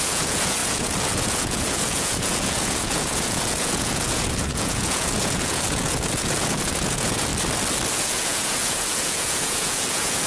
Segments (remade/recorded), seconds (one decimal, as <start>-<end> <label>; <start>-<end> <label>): 0.0-7.3 remade; 7.3-7.9 recorded; 7.9-10.3 remade